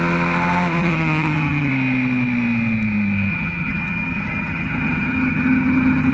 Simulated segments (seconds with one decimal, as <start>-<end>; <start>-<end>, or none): 0.8-1.7; 3.3-6.1